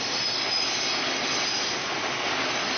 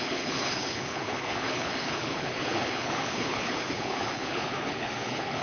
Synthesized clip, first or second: second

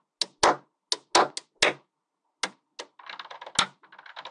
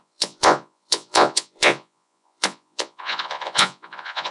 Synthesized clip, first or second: second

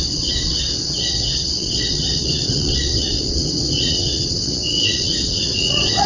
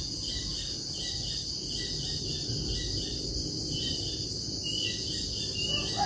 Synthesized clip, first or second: first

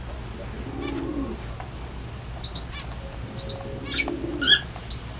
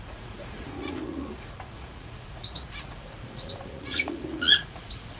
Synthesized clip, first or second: second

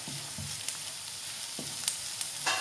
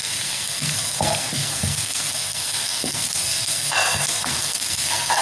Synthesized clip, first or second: second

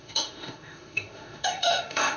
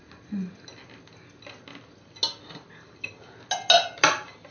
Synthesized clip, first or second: first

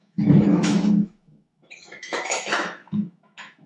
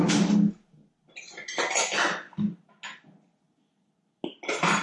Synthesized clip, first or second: first